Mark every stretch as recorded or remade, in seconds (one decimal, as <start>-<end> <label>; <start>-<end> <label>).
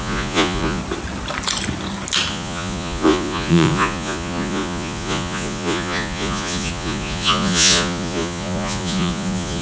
0.0-0.8 remade; 0.8-2.3 recorded; 2.3-9.6 remade